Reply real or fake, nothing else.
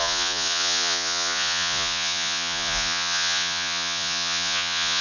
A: fake